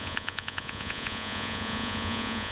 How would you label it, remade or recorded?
remade